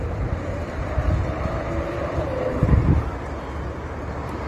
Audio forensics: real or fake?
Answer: fake